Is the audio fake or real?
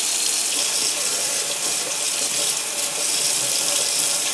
real